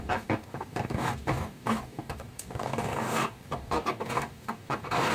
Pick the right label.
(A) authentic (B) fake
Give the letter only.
B